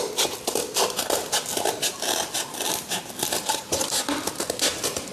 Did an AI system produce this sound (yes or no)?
no